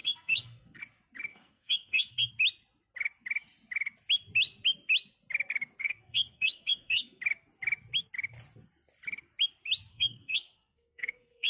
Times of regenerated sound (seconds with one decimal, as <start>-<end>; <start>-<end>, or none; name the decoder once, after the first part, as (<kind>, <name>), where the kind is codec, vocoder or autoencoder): 0.0-0.8 (codec, SNAC); 1.3-2.3; 5.8-7.2; 9.9-11.5

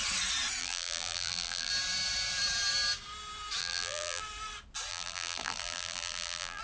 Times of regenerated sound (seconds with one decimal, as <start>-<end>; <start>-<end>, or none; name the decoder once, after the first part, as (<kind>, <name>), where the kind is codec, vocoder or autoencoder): 0.6-1.7 (vocoder, BigVGAN v2); 3.6-4.2; 4.9-6.6

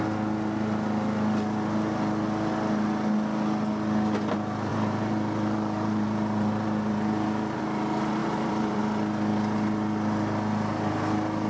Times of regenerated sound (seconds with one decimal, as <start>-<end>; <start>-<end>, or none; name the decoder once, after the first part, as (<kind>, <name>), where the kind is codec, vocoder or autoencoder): 4.7-7.6 (vocoder, BigVGAN v2); 8.2-8.8

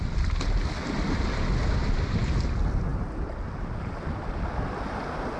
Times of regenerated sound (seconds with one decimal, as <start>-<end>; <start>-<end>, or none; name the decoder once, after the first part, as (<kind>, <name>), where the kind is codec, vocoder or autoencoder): 2.9-4.5 (vocoder, BigVGAN v2)

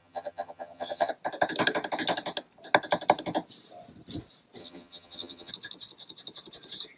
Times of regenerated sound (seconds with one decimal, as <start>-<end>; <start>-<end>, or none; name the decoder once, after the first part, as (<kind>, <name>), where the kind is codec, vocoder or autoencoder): 0.0-1.1 (vocoder, HiFi-GAN); 4.6-5.5

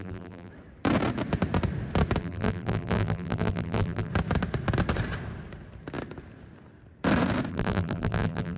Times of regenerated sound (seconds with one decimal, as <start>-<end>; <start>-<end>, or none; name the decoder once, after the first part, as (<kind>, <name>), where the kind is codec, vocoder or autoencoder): 0.0-0.5 (vocoder, BigVGAN v2); 2.2-4.1; 7.5-8.6